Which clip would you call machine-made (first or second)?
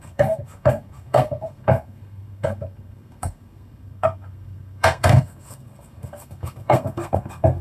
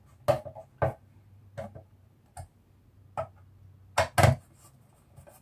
first